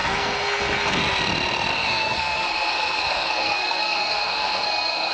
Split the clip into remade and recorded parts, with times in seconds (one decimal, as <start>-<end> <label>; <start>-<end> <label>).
0.0-1.0 remade; 1.0-1.7 recorded; 1.7-5.1 remade